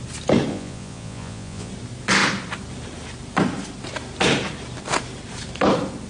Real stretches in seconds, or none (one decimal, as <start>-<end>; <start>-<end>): 0.0-0.5; 1.7-6.1